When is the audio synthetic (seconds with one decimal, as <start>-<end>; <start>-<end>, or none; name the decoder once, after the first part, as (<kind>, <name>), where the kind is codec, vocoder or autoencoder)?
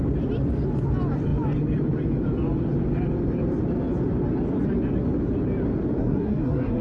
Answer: 6.0-6.8 (codec, SNAC)